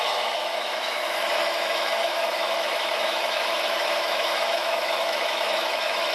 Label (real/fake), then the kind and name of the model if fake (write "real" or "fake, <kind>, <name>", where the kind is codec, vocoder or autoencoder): fake, autoencoder, DAC-VAE